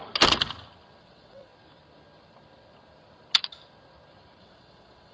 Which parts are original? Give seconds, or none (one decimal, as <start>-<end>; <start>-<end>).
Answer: 0.0-1.0; 1.5-4.4